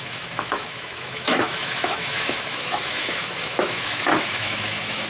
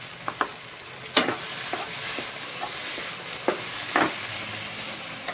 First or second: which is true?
second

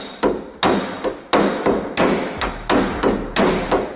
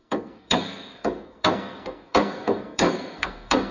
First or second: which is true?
first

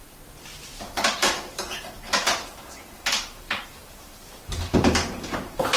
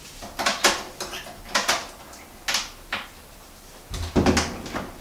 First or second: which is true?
second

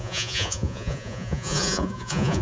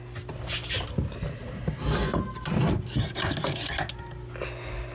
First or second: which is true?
second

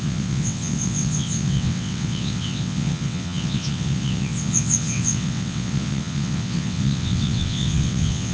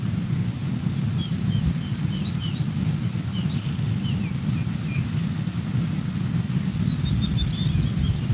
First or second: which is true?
second